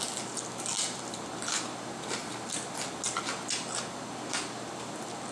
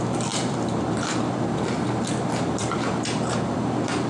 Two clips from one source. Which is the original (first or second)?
first